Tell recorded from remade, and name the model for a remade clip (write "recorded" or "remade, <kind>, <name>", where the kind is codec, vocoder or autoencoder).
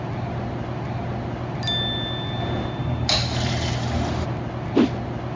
recorded